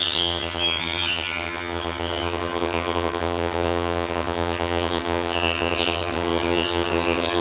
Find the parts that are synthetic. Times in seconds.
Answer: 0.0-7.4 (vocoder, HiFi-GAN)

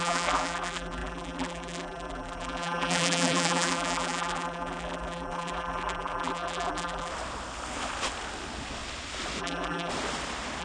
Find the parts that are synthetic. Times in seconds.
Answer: 0.0-7.1 (vocoder, BigVGAN v2); 9.4-9.9

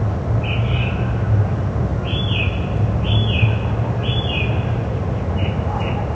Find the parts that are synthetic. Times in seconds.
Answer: none

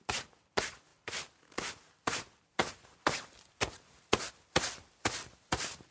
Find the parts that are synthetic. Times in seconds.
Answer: none